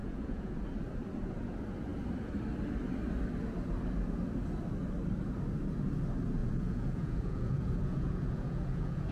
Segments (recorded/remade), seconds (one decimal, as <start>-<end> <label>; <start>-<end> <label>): 0.0-0.5 remade; 0.5-6.4 recorded; 6.4-9.1 remade